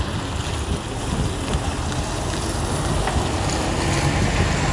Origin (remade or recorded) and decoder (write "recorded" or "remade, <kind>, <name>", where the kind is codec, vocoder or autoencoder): recorded